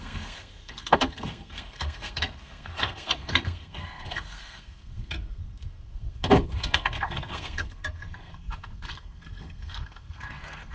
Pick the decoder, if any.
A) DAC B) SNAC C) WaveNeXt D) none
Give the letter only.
B